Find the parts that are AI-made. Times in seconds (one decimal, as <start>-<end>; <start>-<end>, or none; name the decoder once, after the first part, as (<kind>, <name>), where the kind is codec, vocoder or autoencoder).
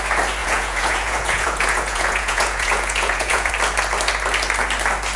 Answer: 0.4-3.5 (vocoder, Vocos)